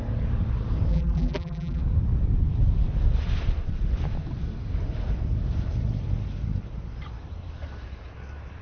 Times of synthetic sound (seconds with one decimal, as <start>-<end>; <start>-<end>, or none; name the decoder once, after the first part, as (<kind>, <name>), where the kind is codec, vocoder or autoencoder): 0.9-1.8 (vocoder, BigVGAN v2)